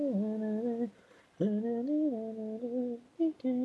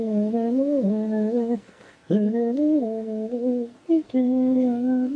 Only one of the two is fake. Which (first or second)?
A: second